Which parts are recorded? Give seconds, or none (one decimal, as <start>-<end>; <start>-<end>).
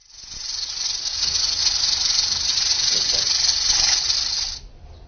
0.0-5.1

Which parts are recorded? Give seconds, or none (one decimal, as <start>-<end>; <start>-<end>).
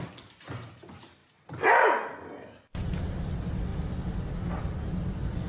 0.0-5.5